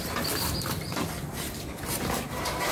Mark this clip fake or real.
real